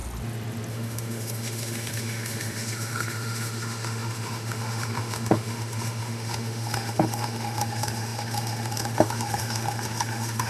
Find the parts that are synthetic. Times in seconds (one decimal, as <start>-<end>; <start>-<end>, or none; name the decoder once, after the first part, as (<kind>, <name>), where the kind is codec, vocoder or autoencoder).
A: 0.7-10.5 (autoencoder, DAC-VAE)